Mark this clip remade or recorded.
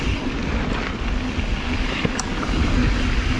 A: recorded